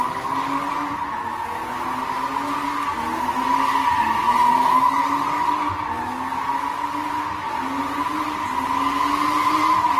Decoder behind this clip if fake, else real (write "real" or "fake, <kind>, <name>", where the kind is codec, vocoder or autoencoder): real